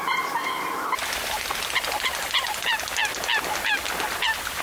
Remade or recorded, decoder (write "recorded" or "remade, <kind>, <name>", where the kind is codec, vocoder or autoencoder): recorded